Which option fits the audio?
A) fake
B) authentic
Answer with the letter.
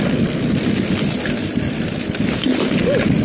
B